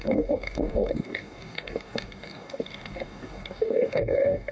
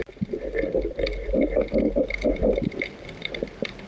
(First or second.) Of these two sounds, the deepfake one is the first